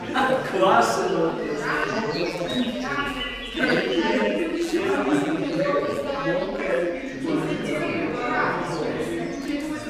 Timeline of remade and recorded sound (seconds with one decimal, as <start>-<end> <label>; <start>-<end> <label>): 0.0-1.8 recorded; 1.8-6.9 remade; 6.9-9.9 recorded

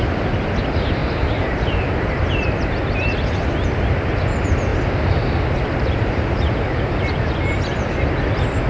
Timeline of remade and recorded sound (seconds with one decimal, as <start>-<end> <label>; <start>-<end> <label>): 0.0-1.0 recorded; 1.0-2.0 remade; 2.0-4.7 recorded; 4.7-7.2 remade; 7.2-8.7 recorded

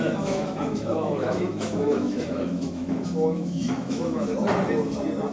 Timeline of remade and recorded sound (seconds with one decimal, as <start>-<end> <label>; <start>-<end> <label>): 0.0-4.3 remade; 4.3-5.3 recorded

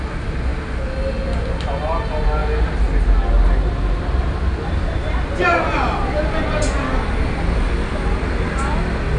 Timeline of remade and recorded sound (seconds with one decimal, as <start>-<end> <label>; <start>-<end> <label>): 0.0-9.2 recorded